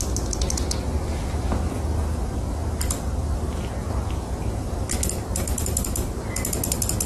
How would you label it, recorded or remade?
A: recorded